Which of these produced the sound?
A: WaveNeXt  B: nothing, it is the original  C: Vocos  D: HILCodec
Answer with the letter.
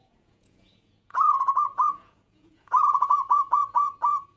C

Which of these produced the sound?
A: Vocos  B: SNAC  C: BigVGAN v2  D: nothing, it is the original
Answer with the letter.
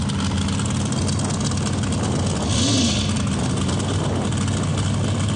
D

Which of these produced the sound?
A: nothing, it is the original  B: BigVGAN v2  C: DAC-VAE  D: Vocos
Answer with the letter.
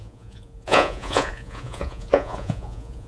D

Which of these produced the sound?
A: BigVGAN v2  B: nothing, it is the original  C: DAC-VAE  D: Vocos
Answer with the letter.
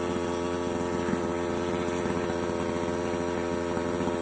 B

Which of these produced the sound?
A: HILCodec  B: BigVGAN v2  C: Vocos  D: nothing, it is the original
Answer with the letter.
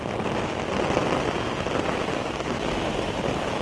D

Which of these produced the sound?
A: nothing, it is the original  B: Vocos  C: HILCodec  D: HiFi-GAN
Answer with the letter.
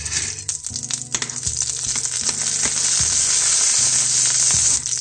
A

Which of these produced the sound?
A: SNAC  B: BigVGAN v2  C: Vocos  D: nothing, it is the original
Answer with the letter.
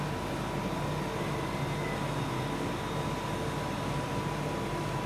D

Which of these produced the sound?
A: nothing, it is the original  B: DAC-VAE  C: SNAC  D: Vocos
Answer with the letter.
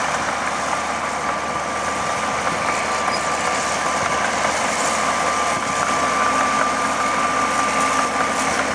A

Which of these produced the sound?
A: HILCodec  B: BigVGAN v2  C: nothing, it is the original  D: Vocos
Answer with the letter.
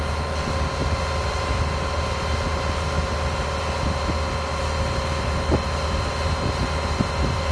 C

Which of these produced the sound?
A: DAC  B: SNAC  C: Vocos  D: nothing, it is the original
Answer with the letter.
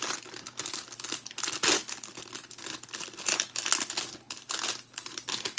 D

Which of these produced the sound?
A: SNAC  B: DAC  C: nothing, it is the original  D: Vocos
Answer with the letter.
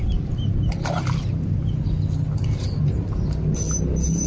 C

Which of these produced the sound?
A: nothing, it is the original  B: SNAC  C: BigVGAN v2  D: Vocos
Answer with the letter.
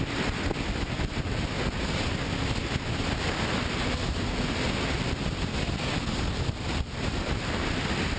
A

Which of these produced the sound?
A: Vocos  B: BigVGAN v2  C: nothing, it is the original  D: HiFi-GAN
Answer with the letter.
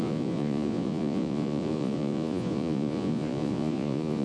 A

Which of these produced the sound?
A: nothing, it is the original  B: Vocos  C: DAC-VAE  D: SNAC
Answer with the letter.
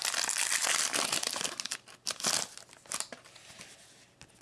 A